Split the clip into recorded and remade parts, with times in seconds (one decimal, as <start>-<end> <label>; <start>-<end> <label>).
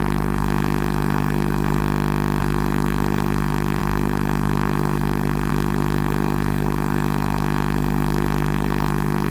0.0-1.8 remade; 1.8-2.4 recorded; 2.4-9.3 remade